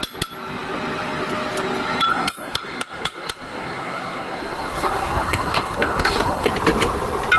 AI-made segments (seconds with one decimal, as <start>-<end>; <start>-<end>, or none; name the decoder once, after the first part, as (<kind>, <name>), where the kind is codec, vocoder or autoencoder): 2.1-6.5 (codec, SNAC)